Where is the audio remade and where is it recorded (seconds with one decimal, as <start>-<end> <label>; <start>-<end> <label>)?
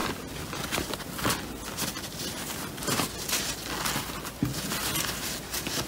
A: 0.0-5.9 recorded